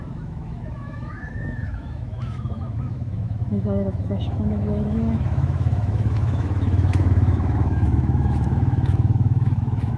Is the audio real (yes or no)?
no